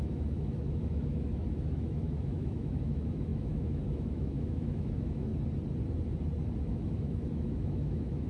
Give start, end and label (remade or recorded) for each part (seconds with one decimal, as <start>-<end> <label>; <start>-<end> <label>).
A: 0.0-5.3 remade; 5.3-6.6 recorded; 6.6-8.3 remade